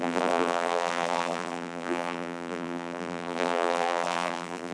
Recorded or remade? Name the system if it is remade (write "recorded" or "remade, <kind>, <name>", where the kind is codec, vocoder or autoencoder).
remade, vocoder, BigVGAN v2